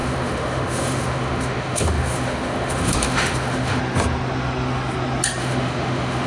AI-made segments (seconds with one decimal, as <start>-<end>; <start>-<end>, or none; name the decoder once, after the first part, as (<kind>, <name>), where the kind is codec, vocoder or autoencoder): 0.0-3.8 (autoencoder, DAC-VAE); 5.4-6.3